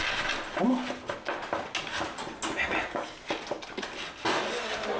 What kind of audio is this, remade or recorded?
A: recorded